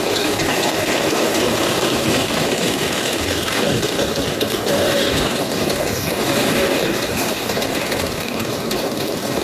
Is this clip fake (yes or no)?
yes